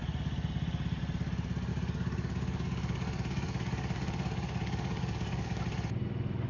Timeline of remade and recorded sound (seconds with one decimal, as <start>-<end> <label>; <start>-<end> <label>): 0.0-1.7 recorded; 1.7-5.6 remade; 5.6-6.5 recorded